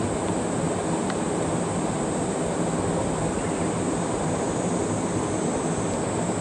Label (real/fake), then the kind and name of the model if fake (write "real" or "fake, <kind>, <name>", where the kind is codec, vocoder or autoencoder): real